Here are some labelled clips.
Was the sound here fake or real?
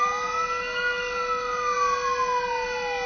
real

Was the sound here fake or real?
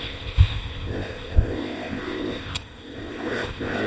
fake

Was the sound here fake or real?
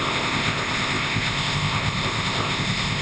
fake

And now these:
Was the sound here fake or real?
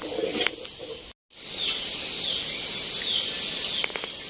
real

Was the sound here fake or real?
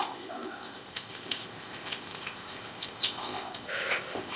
fake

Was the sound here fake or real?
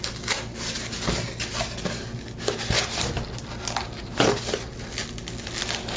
real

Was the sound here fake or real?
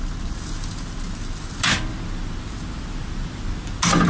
real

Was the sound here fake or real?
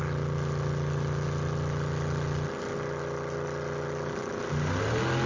real